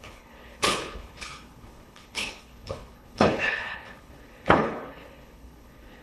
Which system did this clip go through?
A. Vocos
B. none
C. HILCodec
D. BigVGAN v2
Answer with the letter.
C